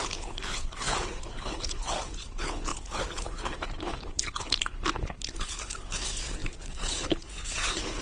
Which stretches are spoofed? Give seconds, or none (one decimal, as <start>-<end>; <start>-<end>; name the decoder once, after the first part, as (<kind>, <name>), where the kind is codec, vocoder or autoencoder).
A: 0.0-8.0 (codec, HILCodec)